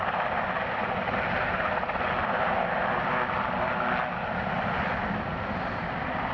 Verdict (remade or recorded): recorded